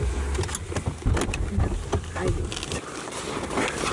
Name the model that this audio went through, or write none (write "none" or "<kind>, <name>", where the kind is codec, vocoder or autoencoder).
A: none